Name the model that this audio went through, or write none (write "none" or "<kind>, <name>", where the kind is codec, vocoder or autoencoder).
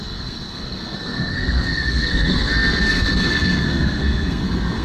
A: codec, SNAC